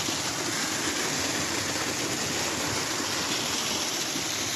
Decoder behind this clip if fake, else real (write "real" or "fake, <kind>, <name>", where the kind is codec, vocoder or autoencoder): real